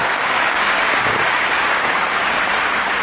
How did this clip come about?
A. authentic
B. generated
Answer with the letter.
B